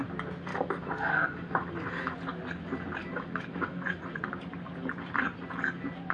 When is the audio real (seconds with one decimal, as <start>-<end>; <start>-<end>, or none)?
0.0-0.5; 1.7-3.0; 4.0-6.1